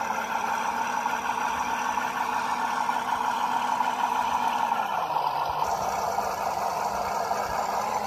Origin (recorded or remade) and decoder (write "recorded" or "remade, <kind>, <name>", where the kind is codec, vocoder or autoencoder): recorded